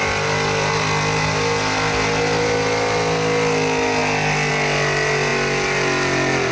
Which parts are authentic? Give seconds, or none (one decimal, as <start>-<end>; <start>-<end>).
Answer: 0.0-6.5

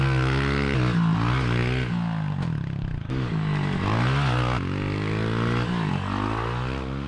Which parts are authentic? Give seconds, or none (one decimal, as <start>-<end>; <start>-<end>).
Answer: 0.0-7.1